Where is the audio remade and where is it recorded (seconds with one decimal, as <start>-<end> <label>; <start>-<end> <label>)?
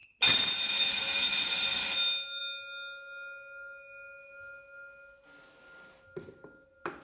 0.0-7.0 recorded